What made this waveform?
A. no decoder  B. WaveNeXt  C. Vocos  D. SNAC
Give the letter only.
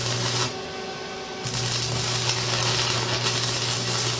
A